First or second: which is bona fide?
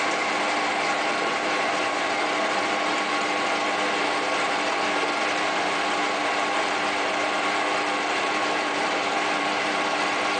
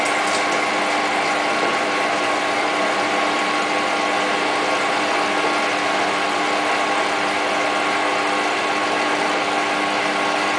second